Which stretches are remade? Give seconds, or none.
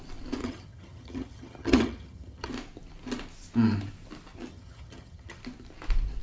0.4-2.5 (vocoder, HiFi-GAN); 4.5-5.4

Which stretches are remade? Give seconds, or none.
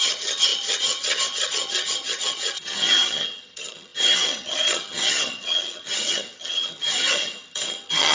0.0-8.1 (vocoder, HiFi-GAN)